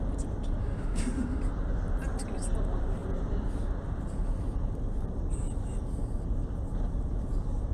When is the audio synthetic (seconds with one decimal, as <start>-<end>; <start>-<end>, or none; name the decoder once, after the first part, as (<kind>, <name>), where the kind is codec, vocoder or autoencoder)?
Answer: 0.6-1.4 (autoencoder, DAC-VAE)